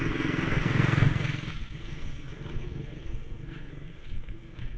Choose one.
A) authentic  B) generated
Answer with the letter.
B